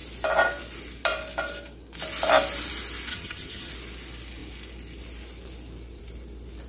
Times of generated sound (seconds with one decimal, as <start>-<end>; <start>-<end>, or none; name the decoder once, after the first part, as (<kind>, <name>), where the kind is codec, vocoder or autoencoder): 3.1-3.7 (vocoder, HiFi-GAN)